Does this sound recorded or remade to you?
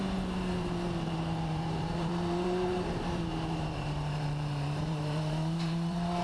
remade